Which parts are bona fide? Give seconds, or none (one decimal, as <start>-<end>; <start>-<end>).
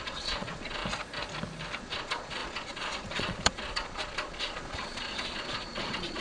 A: 0.8-1.8